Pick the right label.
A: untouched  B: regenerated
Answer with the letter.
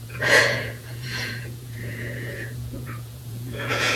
B